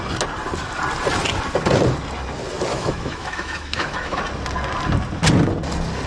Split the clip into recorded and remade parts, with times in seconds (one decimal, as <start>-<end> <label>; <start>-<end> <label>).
0.0-2.7 recorded; 2.7-4.2 remade; 4.2-6.1 recorded